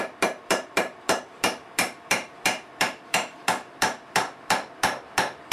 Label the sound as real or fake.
fake